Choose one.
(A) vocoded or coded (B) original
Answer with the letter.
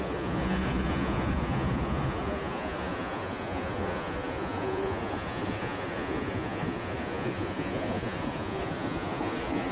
A